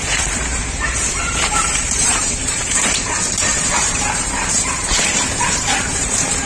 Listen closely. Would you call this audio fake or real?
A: fake